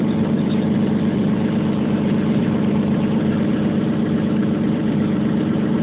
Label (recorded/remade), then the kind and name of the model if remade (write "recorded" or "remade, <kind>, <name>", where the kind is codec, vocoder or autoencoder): remade, vocoder, BigVGAN v2